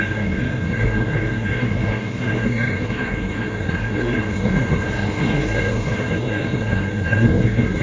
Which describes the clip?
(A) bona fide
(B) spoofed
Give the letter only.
B